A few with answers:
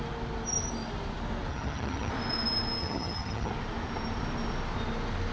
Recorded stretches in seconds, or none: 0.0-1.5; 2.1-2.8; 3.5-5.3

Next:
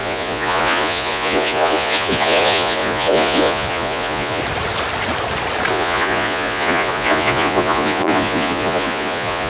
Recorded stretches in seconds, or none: 4.4-5.7